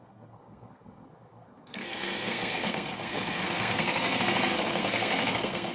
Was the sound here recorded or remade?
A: remade